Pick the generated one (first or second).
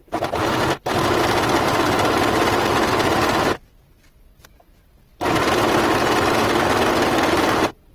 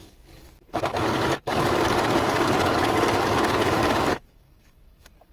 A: second